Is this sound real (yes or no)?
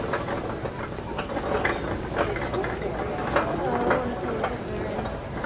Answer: yes